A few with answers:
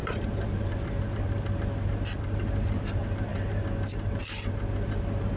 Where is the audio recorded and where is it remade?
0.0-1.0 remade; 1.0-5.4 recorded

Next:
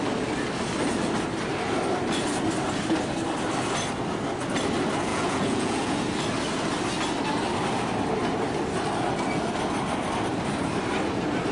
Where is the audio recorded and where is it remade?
0.0-5.1 recorded; 5.1-5.9 remade; 5.9-11.5 recorded

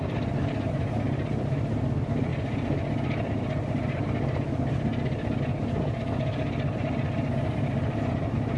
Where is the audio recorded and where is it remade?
0.0-8.6 recorded

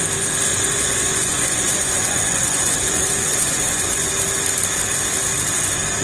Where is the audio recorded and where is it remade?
0.0-0.5 recorded; 0.5-4.1 remade; 4.1-6.0 recorded

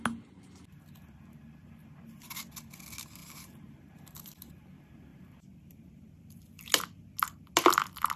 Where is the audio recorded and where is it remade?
0.0-3.2 recorded; 3.2-4.5 remade; 4.5-5.1 recorded; 5.1-6.7 remade; 6.7-8.2 recorded

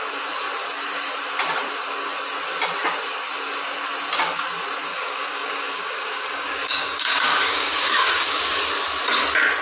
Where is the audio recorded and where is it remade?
0.0-4.9 recorded; 4.9-8.5 remade; 8.5-9.6 recorded